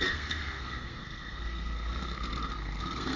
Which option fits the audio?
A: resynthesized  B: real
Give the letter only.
A